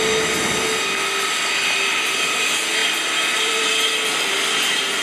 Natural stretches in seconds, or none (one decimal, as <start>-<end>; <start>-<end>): 0.0-2.8; 3.9-5.0